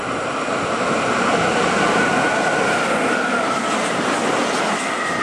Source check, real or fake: real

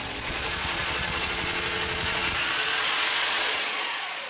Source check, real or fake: fake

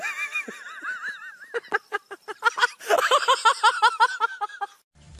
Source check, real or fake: real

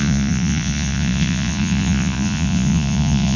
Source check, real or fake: fake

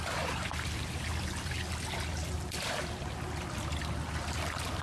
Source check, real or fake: real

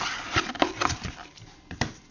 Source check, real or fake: fake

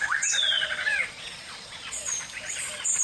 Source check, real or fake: fake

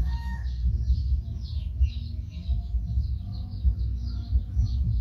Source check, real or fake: fake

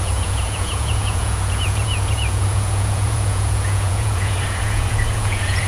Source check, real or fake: fake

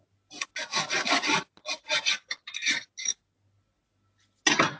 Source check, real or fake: real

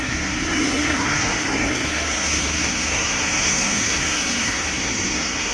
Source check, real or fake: fake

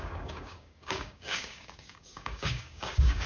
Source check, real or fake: fake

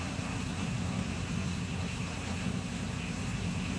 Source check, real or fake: fake